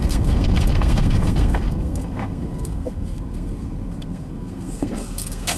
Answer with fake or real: fake